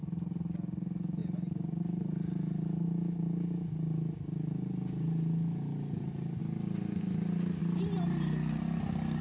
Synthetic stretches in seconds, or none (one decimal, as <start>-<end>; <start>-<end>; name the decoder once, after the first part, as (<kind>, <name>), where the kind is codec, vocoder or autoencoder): none